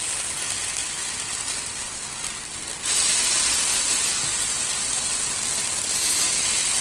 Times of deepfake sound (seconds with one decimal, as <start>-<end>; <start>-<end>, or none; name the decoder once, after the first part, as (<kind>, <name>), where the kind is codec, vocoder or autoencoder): none